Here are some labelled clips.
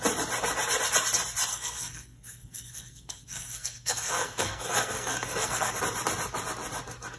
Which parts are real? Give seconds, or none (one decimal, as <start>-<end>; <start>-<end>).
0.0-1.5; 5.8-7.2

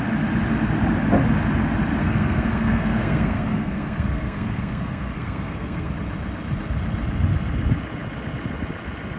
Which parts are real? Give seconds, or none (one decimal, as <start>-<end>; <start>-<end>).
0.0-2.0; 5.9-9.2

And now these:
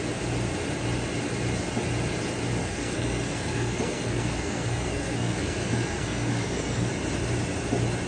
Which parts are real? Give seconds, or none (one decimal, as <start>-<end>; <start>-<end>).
0.0-2.6; 6.9-8.1

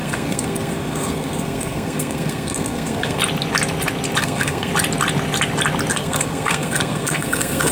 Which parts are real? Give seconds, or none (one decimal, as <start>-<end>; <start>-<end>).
3.2-4.2; 4.7-5.9